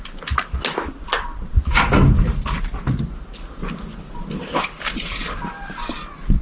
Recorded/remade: recorded